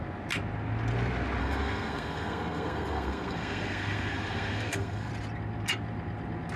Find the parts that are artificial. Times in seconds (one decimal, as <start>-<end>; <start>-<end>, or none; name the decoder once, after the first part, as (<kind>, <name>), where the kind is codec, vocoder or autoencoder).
1.4-5.1 (codec, SNAC)